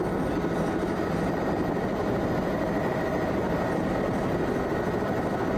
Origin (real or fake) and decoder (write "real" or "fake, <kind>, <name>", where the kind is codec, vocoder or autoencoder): real